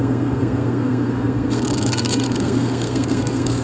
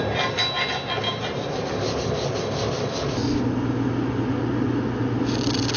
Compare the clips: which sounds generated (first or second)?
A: first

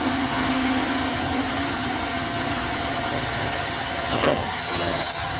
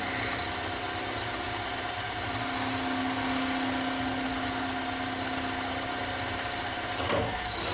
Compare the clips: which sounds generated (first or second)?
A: first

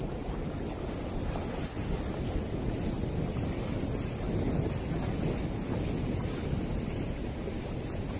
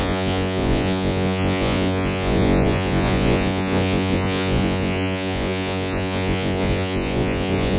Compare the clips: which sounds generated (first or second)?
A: second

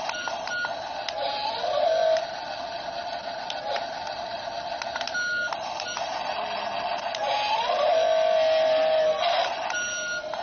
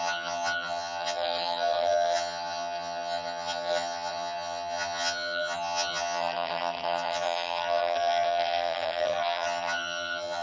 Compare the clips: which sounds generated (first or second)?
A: second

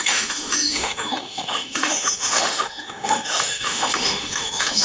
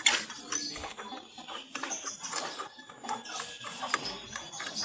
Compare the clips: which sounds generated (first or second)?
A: first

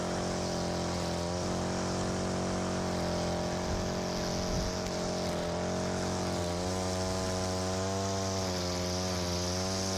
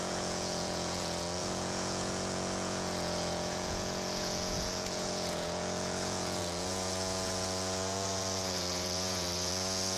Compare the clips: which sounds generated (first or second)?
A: second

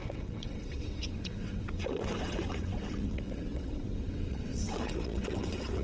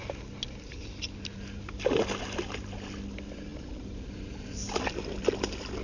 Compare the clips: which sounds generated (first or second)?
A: first